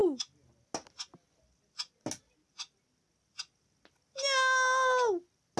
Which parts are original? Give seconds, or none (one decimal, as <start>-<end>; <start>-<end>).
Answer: 0.0-5.6